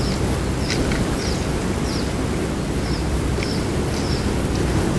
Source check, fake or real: real